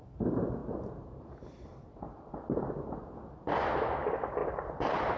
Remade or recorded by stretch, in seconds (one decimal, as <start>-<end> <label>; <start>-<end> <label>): 0.0-0.6 remade; 0.6-1.2 recorded; 1.2-5.2 remade